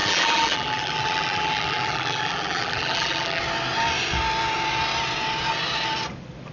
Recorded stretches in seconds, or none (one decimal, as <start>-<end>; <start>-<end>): 3.4-6.5